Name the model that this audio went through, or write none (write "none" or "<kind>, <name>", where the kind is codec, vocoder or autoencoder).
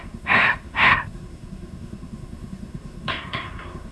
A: codec, SNAC